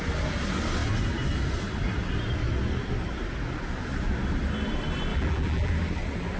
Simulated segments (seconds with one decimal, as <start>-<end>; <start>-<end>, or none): 5.1-5.7